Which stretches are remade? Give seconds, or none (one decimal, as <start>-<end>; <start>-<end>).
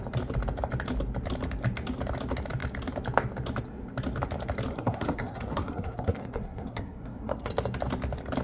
4.7-7.5